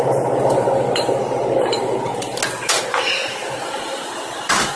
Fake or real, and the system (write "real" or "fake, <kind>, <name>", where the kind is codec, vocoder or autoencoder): real